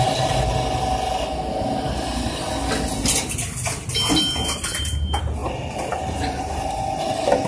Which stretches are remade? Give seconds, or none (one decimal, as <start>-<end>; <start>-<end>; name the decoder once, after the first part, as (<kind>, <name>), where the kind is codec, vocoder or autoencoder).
5.4-6.4 (vocoder, BigVGAN v2)